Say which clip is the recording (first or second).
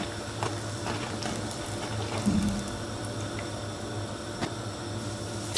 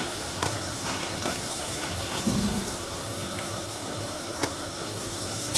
first